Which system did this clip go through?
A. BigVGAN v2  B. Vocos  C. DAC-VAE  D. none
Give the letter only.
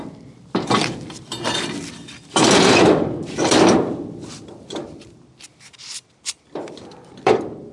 A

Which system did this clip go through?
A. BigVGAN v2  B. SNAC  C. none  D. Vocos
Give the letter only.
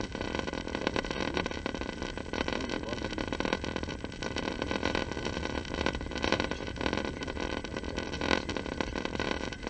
A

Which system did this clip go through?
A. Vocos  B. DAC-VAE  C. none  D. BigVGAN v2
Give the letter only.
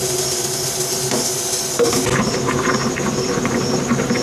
C